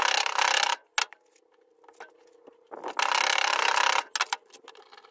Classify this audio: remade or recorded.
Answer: recorded